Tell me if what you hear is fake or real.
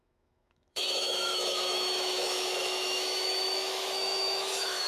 fake